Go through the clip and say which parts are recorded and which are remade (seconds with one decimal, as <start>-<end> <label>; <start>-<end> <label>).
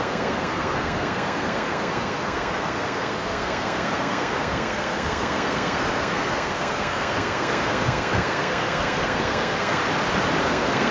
0.0-9.8 remade; 9.8-10.4 recorded; 10.4-10.9 remade